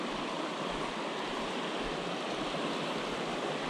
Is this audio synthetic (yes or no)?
no